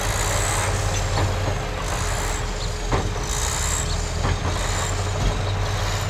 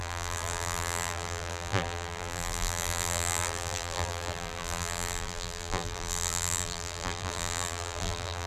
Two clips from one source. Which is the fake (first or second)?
second